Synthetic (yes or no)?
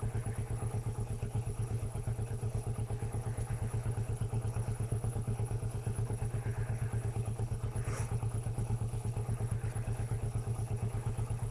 yes